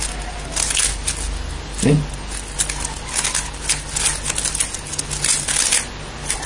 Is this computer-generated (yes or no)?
no